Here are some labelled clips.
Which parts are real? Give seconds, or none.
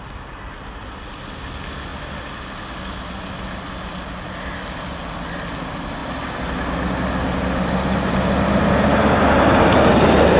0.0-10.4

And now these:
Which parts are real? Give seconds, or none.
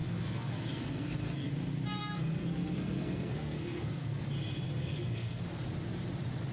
1.5-2.0; 4.2-4.8; 5.4-6.5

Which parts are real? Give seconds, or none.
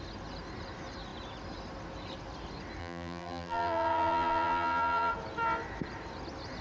0.0-2.8; 5.1-6.6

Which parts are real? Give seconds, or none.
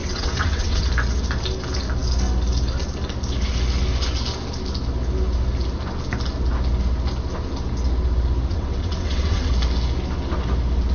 0.9-8.5; 9.5-10.9